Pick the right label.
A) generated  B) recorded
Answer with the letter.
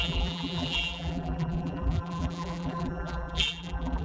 A